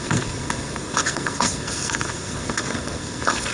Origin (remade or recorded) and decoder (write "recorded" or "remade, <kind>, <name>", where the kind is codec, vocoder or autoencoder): remade, codec, SNAC